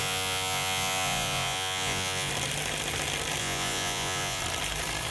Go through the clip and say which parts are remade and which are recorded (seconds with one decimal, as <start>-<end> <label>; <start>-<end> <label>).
0.0-2.3 remade; 2.3-3.4 recorded; 3.4-4.4 remade; 4.4-5.1 recorded